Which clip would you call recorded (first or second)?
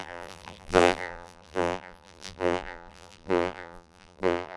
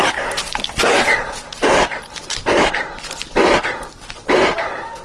second